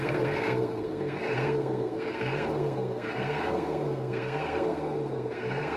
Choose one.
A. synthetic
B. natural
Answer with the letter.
A